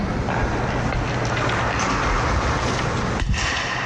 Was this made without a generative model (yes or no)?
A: yes